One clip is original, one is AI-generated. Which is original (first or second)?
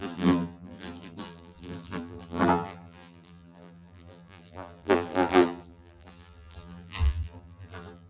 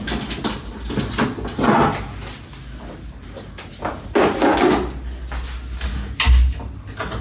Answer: second